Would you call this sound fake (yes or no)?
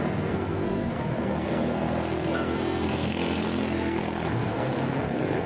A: yes